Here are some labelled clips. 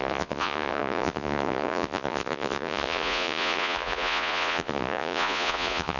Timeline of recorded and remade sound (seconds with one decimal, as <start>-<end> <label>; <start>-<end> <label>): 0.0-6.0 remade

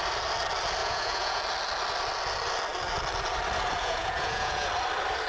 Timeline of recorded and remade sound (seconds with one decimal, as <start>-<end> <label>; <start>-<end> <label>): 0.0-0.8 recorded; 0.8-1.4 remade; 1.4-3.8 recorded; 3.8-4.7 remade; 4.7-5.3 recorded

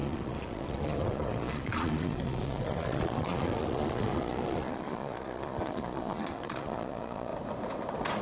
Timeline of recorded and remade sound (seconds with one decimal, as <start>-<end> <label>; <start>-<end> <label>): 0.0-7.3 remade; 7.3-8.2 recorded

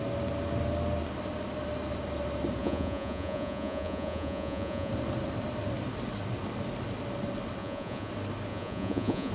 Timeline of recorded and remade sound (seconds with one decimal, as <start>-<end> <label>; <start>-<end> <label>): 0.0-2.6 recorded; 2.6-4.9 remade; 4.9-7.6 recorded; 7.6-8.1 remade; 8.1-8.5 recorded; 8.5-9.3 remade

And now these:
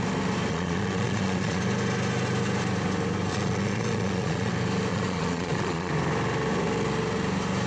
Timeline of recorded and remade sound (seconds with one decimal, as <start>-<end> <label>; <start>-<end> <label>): 0.0-0.5 recorded; 0.5-1.6 remade; 1.6-3.3 recorded; 3.3-4.5 remade; 4.5-4.9 recorded; 4.9-5.9 remade; 5.9-7.7 recorded